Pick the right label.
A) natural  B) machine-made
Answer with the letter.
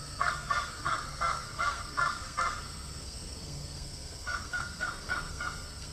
B